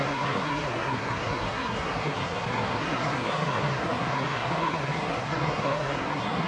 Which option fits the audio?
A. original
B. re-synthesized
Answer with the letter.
B